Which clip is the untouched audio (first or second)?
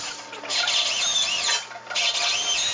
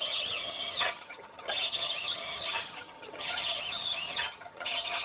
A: first